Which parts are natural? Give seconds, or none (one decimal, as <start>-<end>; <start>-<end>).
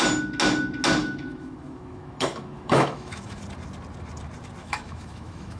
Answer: 0.0-1.0; 3.4-4.6